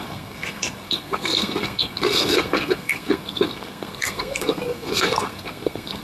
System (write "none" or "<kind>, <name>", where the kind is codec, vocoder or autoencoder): codec, SNAC